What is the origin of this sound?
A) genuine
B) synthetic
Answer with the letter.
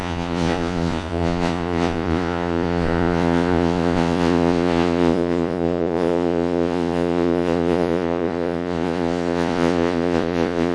B